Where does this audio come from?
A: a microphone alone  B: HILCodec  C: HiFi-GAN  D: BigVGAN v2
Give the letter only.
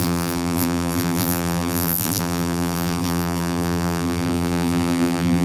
D